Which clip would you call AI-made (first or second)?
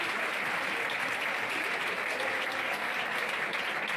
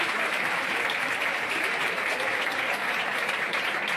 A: second